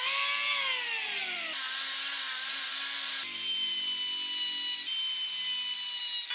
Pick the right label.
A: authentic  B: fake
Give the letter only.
A